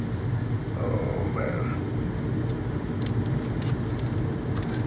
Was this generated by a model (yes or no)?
no